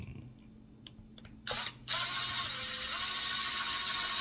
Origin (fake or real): real